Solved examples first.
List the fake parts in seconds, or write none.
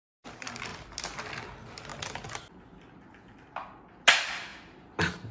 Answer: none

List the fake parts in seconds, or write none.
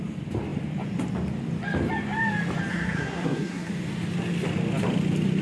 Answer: 2.7-3.7 (codec, SNAC)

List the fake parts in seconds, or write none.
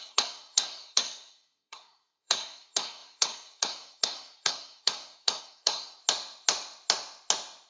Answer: 0.0-6.0 (codec, SNAC)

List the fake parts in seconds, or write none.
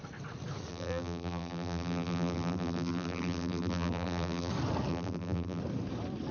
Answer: 0.7-4.5 (vocoder, BigVGAN v2); 4.9-5.6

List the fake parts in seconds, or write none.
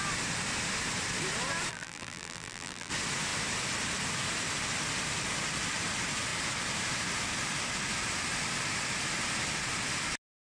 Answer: 1.7-2.9 (vocoder, BigVGAN v2)